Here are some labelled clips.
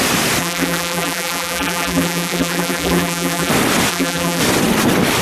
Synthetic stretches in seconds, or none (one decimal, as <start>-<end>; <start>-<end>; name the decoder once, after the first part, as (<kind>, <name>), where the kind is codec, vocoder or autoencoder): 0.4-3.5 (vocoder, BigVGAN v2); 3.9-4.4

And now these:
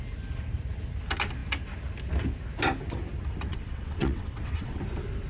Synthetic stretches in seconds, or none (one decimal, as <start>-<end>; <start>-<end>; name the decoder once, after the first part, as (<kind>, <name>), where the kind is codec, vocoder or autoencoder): 3.5-4.8 (vocoder, WaveNeXt)

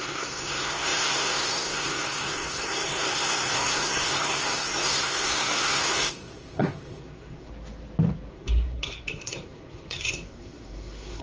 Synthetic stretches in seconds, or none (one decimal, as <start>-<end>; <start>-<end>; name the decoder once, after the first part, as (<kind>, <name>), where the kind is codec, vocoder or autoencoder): 0.0-7.5 (codec, SNAC); 8.3-11.2

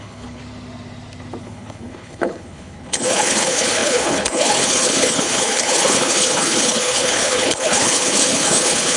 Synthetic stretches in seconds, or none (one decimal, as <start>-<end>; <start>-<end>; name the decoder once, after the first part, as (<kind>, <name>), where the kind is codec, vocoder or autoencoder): 0.0-0.4 (codec, HILCodec); 1.4-9.0